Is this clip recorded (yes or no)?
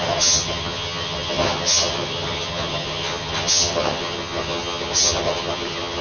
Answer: no